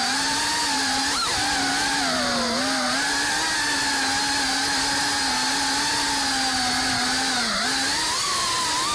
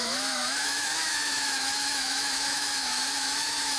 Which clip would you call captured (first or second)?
first